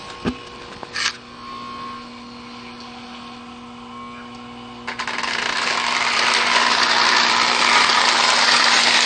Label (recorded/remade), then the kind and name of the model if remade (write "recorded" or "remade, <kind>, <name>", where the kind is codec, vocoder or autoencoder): recorded